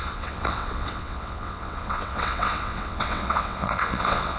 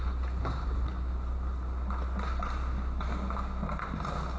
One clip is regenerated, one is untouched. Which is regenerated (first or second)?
first